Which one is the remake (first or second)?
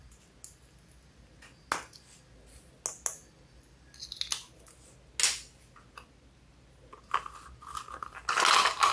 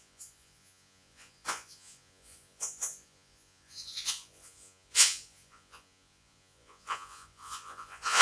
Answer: second